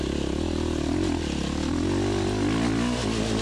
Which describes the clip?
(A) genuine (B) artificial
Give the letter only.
A